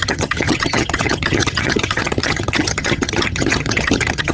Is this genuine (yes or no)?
no